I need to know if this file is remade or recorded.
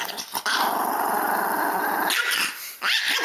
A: recorded